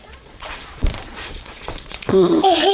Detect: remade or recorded remade